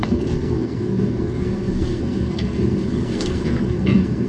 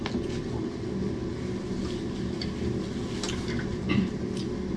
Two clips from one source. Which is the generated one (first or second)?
first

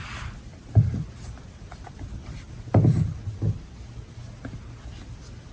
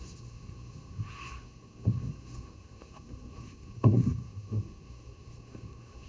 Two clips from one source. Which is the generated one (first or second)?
second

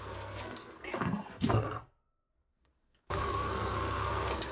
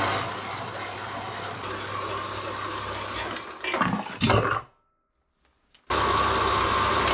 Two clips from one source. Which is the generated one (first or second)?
first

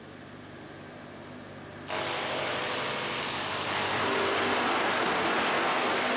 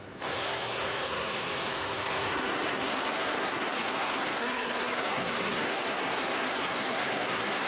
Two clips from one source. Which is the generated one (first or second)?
second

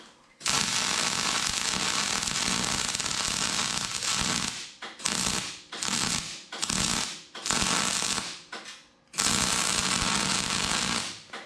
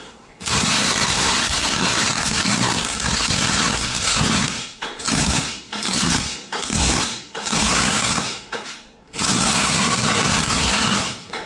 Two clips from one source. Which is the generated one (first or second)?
second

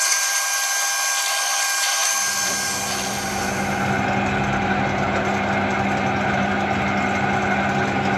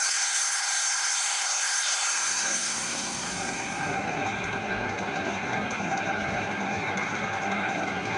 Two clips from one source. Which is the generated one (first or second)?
second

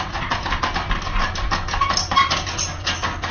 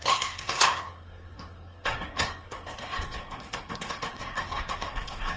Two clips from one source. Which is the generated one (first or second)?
second